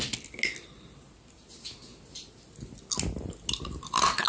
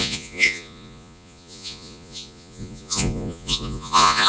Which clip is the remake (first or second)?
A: second